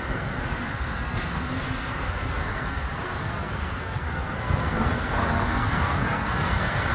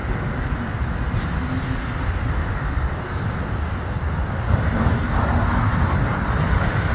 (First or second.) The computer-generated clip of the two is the first